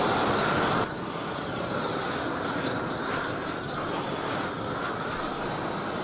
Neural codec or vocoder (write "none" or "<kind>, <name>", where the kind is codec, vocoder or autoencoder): none